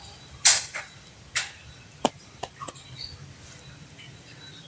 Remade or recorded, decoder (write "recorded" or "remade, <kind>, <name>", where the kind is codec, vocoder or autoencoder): recorded